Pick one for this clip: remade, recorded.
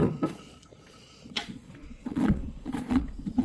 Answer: remade